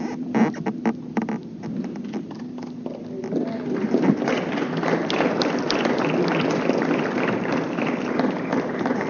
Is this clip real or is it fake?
real